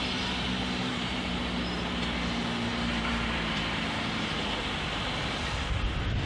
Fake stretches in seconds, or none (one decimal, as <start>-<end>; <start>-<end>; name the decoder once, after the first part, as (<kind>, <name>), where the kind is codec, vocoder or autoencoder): 0.9-1.4 (vocoder, BigVGAN v2); 2.7-4.4